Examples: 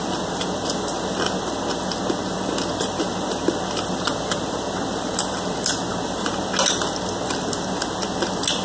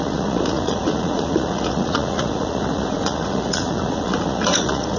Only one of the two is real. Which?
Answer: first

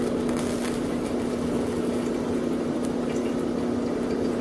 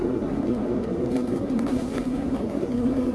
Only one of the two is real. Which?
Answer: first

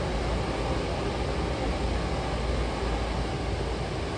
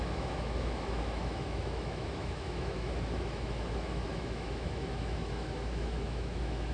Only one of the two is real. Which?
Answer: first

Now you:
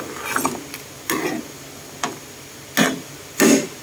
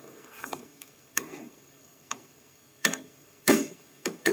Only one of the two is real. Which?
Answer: first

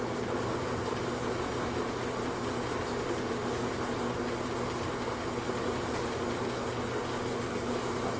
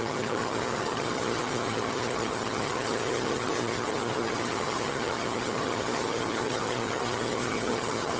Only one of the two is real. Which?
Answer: first